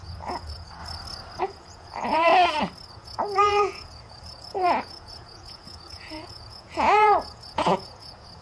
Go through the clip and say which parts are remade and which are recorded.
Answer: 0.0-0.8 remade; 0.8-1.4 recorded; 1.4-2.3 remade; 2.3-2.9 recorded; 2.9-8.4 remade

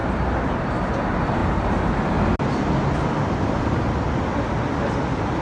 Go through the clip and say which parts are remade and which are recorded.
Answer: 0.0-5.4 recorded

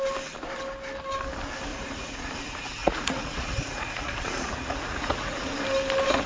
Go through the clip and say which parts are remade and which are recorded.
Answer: 0.0-1.7 recorded; 1.7-2.3 remade; 2.3-2.8 recorded; 2.8-5.5 remade; 5.5-6.3 recorded

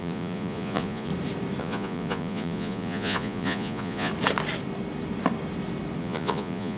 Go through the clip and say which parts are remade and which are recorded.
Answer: 0.0-1.1 remade; 1.1-1.6 recorded; 1.6-4.1 remade; 4.1-6.0 recorded; 6.0-6.8 remade

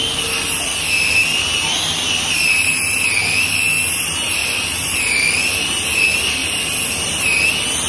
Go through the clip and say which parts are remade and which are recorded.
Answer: 0.0-7.9 recorded

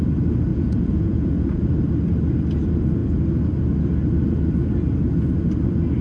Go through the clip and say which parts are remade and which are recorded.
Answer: 0.0-0.5 recorded; 0.5-1.7 remade; 1.7-6.0 recorded

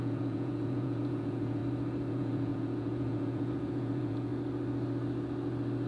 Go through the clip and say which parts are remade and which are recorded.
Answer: 0.0-1.6 remade; 1.6-2.1 recorded; 2.1-4.3 remade; 4.3-5.9 recorded

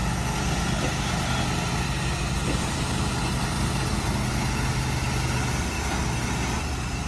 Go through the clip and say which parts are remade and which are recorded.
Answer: 0.0-7.1 recorded